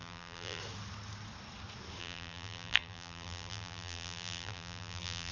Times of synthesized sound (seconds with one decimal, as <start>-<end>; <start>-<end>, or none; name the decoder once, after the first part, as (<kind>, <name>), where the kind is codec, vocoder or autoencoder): 0.0-0.6 (vocoder, BigVGAN v2); 2.0-5.3